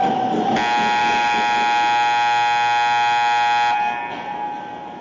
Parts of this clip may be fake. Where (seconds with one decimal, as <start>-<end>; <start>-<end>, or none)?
none

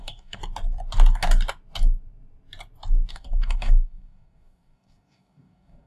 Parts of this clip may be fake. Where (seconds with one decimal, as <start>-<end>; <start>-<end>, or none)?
0.0-0.4; 3.1-5.9

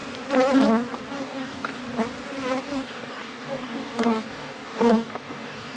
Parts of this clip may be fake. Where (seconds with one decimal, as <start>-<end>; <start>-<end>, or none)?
1.1-1.8; 2.6-5.8

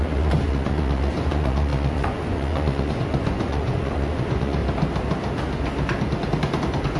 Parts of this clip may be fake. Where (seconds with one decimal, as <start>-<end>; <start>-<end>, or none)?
0.0-4.6

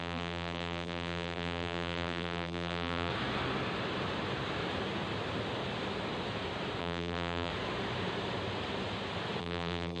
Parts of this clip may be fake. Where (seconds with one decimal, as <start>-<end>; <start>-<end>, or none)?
0.0-3.1; 6.8-7.5; 9.4-10.0

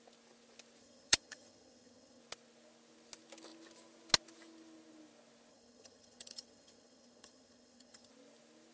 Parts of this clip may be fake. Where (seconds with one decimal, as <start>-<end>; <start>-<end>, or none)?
0.8-2.2; 5.5-8.1

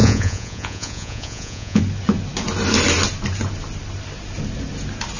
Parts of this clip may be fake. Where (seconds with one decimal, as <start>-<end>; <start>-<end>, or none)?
0.0-1.8

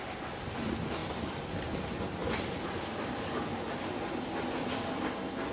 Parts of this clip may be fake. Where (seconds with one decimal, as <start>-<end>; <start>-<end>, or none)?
none